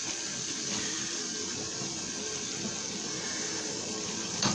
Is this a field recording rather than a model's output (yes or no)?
yes